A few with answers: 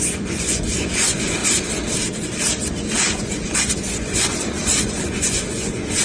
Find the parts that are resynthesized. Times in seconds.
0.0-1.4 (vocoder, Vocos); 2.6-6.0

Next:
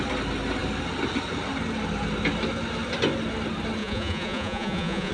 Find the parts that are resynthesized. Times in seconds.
3.8-5.1 (vocoder, Vocos)

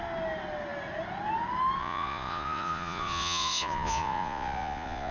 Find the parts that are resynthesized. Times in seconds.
1.8-5.1 (vocoder, Vocos)

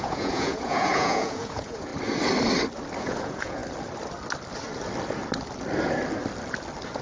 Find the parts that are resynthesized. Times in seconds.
0.0-1.9 (vocoder, Vocos); 3.0-3.6